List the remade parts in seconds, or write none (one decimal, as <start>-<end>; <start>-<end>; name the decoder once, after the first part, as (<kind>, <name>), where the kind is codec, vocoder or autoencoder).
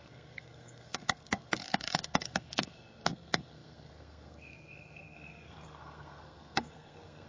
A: 0.0-7.3 (codec, SNAC)